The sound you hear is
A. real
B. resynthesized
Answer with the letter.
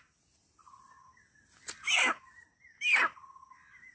A